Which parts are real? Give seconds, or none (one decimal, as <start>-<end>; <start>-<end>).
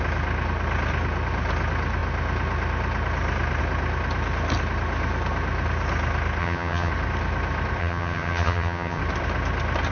0.0-6.4; 6.9-7.8; 9.0-9.9